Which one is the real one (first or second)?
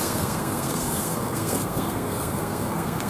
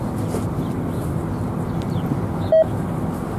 second